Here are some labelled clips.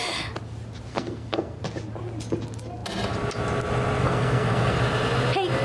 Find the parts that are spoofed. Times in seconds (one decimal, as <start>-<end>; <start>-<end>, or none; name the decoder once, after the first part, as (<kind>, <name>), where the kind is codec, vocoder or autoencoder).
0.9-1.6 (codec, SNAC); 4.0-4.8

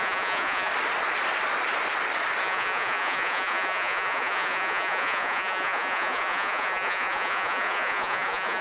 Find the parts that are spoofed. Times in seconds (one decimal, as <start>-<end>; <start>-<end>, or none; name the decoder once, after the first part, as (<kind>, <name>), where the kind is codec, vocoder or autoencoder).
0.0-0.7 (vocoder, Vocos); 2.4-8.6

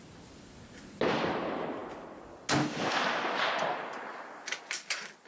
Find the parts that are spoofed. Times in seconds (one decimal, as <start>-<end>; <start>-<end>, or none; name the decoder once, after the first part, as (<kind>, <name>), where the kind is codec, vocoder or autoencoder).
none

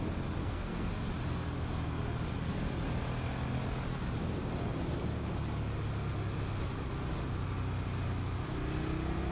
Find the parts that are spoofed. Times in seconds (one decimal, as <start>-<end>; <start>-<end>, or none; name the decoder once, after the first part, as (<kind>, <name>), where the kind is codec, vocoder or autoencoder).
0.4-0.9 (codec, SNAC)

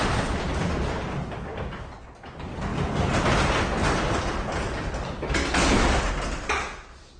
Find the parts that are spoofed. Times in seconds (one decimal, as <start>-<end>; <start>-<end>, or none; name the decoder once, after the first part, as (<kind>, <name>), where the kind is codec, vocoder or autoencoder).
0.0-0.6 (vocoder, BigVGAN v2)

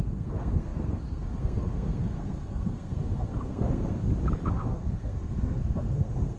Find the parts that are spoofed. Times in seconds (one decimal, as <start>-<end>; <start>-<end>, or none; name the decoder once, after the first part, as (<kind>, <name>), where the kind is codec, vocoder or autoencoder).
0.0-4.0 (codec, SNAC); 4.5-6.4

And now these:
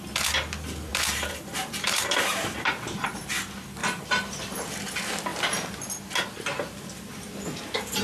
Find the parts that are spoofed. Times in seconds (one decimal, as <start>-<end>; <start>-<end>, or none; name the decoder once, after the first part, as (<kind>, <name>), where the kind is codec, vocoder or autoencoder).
0.9-3.2 (vocoder, BigVGAN v2); 3.8-4.3

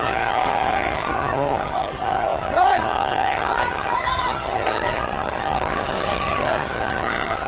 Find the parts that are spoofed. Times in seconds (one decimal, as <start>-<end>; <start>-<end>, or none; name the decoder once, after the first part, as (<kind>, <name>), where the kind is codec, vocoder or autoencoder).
0.0-7.5 (vocoder, HiFi-GAN)